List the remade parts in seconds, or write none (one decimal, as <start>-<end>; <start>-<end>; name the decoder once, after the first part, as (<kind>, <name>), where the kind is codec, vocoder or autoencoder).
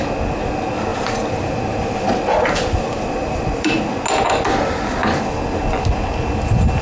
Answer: 0.9-3.7 (vocoder, BigVGAN v2)